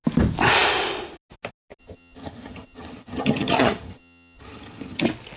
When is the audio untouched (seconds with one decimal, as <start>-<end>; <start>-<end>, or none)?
0.0-1.8; 5.0-5.4